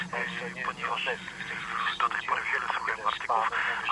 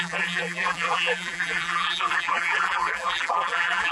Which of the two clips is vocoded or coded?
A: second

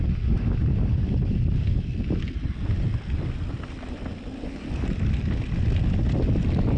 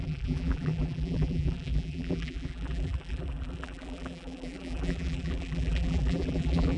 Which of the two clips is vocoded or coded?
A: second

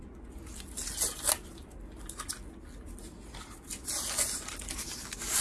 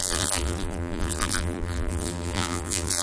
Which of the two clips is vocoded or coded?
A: second